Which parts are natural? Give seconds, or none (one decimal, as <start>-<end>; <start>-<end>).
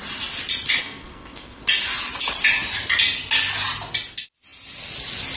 0.0-0.8; 1.6-5.4